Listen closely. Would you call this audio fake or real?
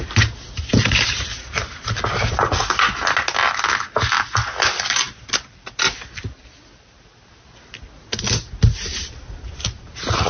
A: real